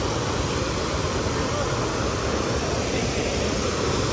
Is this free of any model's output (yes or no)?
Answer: yes